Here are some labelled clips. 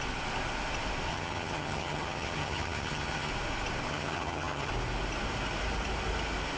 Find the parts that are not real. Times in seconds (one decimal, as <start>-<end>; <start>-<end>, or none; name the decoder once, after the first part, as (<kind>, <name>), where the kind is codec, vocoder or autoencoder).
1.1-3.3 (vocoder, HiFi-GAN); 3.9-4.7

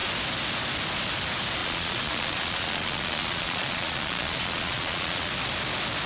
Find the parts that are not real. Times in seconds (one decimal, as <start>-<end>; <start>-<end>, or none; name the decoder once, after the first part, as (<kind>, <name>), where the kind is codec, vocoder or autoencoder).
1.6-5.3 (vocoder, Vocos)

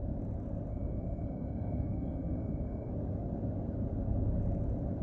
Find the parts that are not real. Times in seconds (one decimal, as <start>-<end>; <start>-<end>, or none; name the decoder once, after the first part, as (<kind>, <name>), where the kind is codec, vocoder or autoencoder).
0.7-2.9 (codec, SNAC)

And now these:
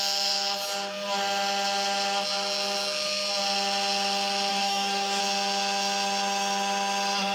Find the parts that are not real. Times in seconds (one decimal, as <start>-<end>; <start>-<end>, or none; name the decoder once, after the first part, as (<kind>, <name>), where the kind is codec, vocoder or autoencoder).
4.5-5.2 (codec, DAC)